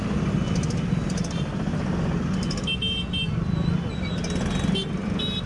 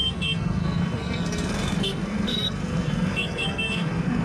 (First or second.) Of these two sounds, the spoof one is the second